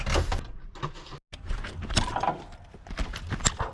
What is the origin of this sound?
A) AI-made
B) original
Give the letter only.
B